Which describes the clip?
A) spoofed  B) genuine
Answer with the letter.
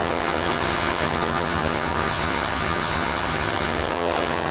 A